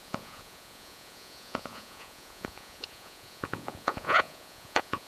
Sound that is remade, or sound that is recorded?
remade